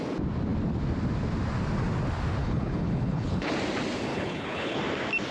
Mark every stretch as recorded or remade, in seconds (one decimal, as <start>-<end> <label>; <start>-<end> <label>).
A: 0.0-2.4 recorded; 2.4-3.5 remade; 3.5-4.1 recorded; 4.1-4.8 remade; 4.8-5.3 recorded